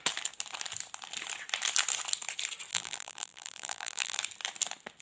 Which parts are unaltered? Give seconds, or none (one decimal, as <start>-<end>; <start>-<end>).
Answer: 0.0-2.7; 4.2-5.0